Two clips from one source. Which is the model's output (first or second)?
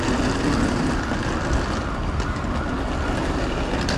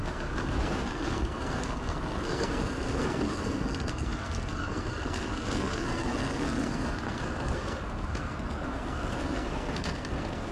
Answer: second